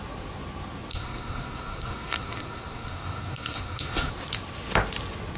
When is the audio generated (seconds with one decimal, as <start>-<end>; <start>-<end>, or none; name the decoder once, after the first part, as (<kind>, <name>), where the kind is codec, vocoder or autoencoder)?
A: 0.9-4.1 (codec, SNAC)